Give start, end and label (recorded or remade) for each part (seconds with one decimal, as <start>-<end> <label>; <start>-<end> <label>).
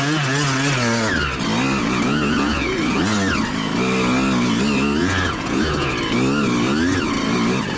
0.0-1.8 recorded; 1.8-3.0 remade; 3.0-5.0 recorded; 5.0-5.9 remade; 5.9-7.8 recorded